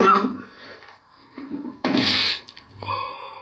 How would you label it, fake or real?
fake